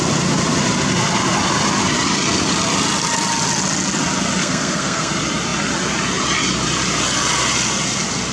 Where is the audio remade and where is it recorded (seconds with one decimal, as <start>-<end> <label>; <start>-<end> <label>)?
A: 0.0-4.4 recorded; 4.4-5.1 remade; 5.1-8.3 recorded